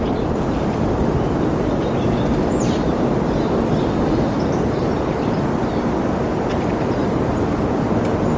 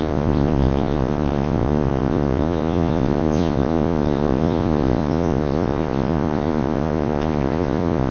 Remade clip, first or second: second